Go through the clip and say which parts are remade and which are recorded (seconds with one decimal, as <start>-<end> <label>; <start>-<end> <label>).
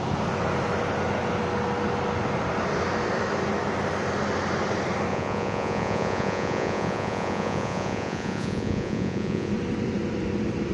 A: 0.0-5.1 recorded; 5.1-9.5 remade; 9.5-10.7 recorded